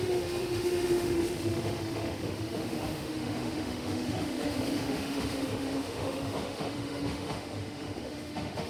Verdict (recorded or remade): remade